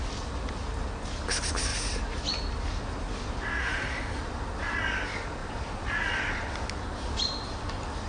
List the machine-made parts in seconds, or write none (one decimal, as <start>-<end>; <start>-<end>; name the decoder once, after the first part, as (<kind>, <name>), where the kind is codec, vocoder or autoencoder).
3.6-4.2 (autoencoder, DAC-VAE)